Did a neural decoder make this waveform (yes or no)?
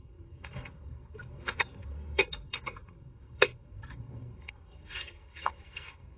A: yes